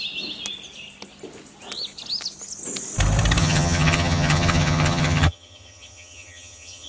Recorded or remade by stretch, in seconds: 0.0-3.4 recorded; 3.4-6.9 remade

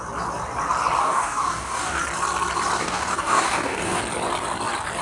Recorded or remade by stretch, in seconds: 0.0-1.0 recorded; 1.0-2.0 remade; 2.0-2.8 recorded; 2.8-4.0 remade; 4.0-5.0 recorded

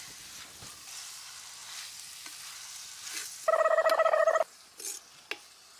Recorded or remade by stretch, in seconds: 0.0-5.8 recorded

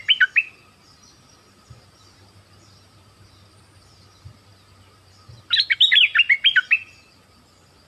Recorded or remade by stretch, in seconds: 0.0-7.9 recorded

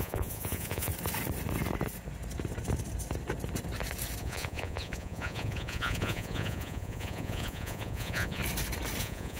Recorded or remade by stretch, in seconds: 0.0-0.9 remade; 0.9-4.2 recorded; 4.2-8.4 remade; 8.4-9.0 recorded; 9.0-9.4 remade